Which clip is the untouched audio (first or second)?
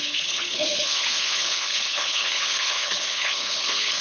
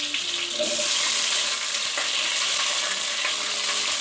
second